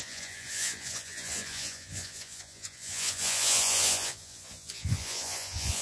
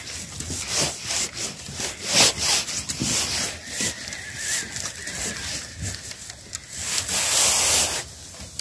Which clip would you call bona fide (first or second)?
second